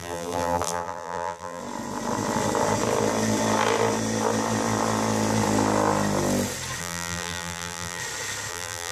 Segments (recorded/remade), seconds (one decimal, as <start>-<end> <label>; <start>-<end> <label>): 0.0-1.6 remade; 1.6-6.8 recorded; 6.8-8.0 remade; 8.0-8.5 recorded; 8.5-8.9 remade